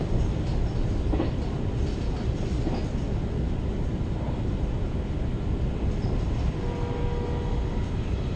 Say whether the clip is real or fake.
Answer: real